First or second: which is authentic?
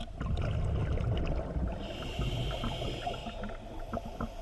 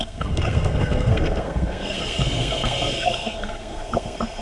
first